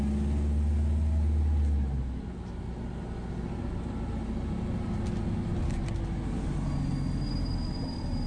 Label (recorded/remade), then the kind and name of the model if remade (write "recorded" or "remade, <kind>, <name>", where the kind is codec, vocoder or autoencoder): recorded